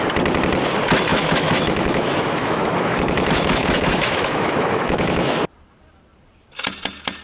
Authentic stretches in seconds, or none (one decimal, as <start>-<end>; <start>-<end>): 0.0-1.1; 5.4-7.2